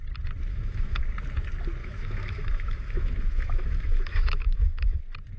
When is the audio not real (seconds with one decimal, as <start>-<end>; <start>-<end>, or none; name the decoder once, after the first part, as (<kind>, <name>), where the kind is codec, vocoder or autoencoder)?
0.5-1.0 (autoencoder, DAC-VAE); 1.8-5.0